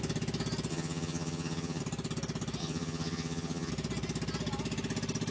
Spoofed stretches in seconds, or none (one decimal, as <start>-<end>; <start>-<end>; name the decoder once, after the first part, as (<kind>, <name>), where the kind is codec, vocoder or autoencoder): 0.7-1.8 (vocoder, HiFi-GAN); 2.6-3.7